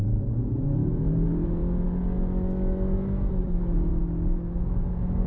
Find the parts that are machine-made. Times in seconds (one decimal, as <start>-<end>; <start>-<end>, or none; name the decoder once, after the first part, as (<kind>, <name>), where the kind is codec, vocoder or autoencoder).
0.0-1.6 (vocoder, BigVGAN v2); 3.3-3.9